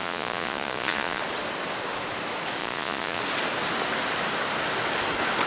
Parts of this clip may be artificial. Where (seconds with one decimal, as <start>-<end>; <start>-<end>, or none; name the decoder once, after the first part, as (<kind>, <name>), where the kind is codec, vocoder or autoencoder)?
0.0-1.2 (vocoder, Vocos); 2.6-3.2